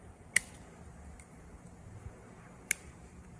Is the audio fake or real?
fake